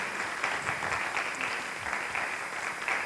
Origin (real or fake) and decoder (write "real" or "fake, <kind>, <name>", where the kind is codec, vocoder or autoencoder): real